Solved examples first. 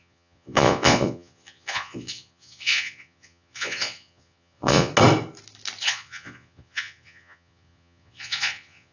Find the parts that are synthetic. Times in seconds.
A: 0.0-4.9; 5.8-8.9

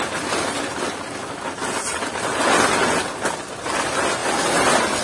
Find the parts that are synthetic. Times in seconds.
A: none

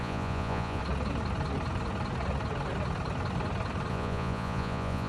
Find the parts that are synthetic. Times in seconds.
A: 0.0-0.8; 3.9-5.1

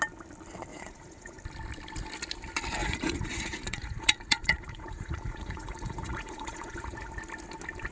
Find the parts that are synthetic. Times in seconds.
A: 0.7-1.4; 2.8-7.1